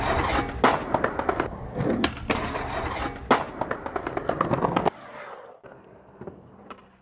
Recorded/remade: recorded